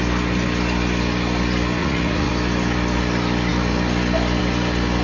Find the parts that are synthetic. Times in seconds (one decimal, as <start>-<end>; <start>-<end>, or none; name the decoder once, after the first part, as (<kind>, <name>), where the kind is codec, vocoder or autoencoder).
1.8-2.3 (vocoder, Vocos)